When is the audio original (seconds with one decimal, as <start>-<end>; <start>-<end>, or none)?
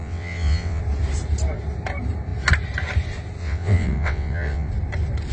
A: 0.8-3.4; 4.7-5.3